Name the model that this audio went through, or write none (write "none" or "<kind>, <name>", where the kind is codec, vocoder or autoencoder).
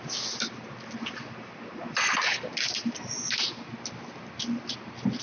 none